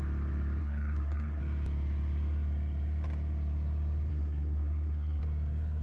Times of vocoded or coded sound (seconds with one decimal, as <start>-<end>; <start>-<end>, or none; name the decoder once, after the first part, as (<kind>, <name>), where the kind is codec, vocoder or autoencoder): 0.6-1.4 (codec, SNAC); 4.1-5.2